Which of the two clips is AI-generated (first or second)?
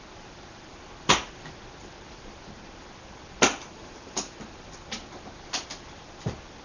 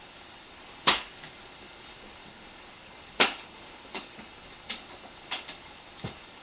second